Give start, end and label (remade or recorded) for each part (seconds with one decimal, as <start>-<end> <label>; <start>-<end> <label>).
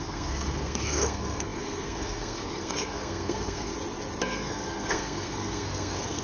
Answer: 0.0-3.7 remade; 3.7-4.2 recorded; 4.2-6.2 remade